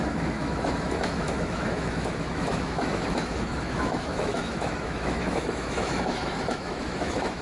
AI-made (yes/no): yes